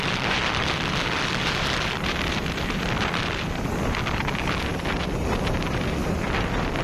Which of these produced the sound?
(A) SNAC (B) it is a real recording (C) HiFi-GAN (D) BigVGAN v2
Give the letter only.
D